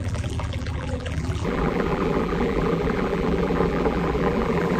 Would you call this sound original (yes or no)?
no